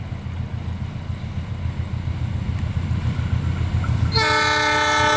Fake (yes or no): no